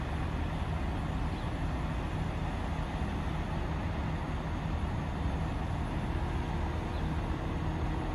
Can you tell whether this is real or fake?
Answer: real